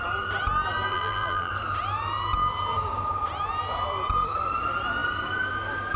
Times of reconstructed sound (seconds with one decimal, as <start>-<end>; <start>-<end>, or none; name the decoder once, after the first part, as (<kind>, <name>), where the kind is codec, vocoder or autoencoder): 0.9-1.5 (vocoder, BigVGAN v2)